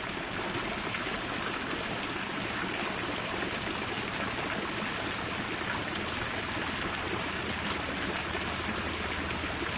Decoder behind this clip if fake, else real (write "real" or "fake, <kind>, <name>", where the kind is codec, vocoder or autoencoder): real